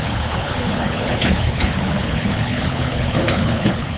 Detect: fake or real fake